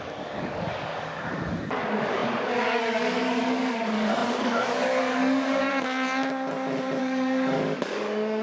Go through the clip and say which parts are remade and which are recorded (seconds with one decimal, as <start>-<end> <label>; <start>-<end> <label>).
0.0-5.7 remade; 5.7-7.0 recorded; 7.0-8.4 remade